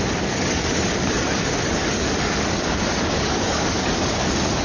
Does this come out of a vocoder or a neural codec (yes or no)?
yes